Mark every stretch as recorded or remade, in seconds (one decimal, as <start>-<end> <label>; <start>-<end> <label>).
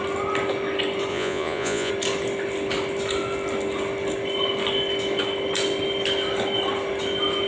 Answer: 0.0-1.1 recorded; 1.1-1.9 remade; 1.9-7.5 recorded